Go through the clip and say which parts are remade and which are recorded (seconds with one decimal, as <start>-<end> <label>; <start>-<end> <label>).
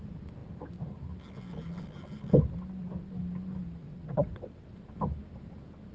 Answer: 0.0-3.8 recorded; 3.8-4.7 remade; 4.7-5.9 recorded